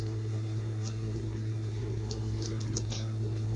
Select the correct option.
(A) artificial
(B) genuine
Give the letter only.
A